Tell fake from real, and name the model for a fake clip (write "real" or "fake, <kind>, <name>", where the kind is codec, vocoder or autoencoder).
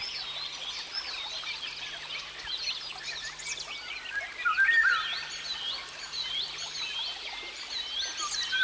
real